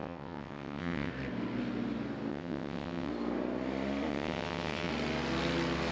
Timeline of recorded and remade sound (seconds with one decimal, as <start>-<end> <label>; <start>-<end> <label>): 0.0-1.1 remade; 1.1-2.3 recorded; 2.3-3.1 remade; 3.1-4.1 recorded; 4.1-4.9 remade; 4.9-5.9 recorded